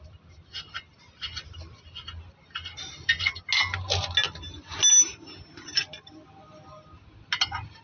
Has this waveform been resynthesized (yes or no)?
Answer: no